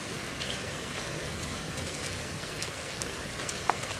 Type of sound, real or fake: fake